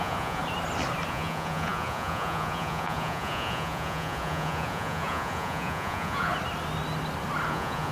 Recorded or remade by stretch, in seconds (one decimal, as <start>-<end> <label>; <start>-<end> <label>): 0.0-0.4 remade; 0.4-1.1 recorded; 1.1-6.3 remade; 6.3-7.5 recorded; 7.5-7.9 remade